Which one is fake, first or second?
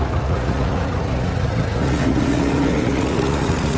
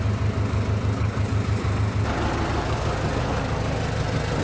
first